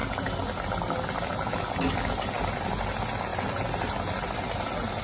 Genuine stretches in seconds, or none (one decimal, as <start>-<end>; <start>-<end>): 0.0-5.0